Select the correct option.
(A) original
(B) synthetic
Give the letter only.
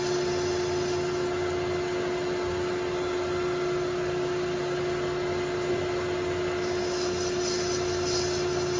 A